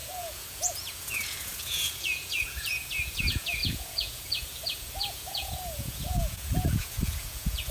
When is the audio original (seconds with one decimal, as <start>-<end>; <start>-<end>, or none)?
none

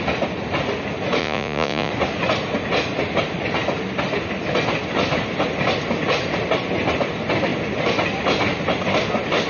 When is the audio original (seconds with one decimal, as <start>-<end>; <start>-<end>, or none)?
0.0-1.2; 1.9-9.5

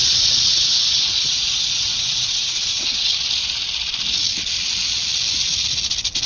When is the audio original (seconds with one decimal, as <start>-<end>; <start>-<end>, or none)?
3.1-6.3